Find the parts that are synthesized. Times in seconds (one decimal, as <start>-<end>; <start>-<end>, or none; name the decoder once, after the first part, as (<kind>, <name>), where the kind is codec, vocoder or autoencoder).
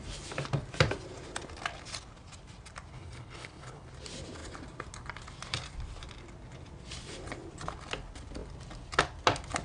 2.9-3.9 (codec, HILCodec)